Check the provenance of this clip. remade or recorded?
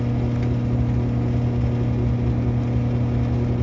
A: recorded